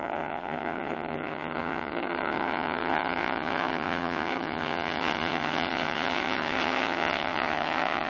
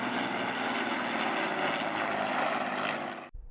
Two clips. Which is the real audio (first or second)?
second